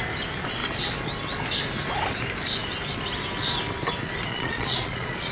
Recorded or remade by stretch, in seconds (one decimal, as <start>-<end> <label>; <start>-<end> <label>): 0.0-4.3 recorded; 4.3-5.3 remade

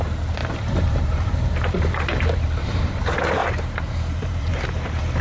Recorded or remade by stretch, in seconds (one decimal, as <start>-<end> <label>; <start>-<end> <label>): 0.0-0.4 recorded; 0.4-3.0 remade; 3.0-3.4 recorded; 3.4-5.2 remade

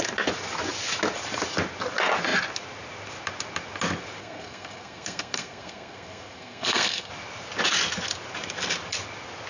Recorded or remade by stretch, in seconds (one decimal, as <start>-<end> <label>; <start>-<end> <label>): 0.0-4.2 recorded; 4.2-7.1 remade; 7.1-9.5 recorded

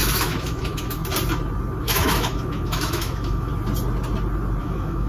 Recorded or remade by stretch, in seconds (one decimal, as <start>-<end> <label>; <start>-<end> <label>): 0.0-1.0 remade; 1.0-1.8 recorded; 1.8-3.5 remade; 3.5-4.6 recorded; 4.6-5.1 remade

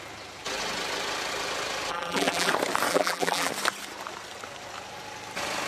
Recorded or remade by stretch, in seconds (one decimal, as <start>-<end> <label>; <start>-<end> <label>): 0.0-1.9 recorded; 1.9-2.5 remade; 2.5-2.9 recorded; 2.9-3.5 remade; 3.5-5.7 recorded